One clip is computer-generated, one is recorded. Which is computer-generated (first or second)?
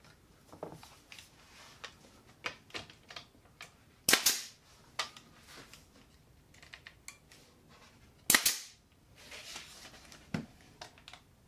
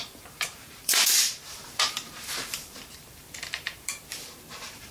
second